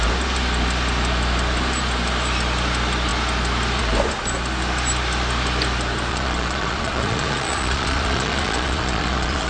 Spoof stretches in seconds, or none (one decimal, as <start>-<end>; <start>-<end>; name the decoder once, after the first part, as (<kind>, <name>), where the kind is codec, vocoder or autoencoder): 6.1-9.5 (vocoder, Vocos)